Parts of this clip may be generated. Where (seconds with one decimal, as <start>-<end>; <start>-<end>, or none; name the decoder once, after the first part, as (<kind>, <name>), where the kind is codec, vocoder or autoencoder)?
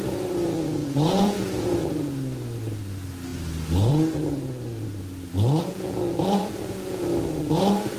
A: 0.8-2.1 (vocoder, Vocos); 5.7-7.0